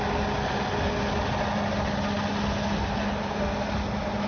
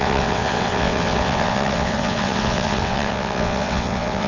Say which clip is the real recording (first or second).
first